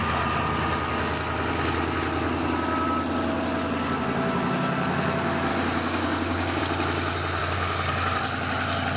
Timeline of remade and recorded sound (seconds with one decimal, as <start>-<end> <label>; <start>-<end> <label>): 0.0-5.5 recorded; 5.5-6.6 remade; 6.6-7.4 recorded; 7.4-8.2 remade; 8.2-9.0 recorded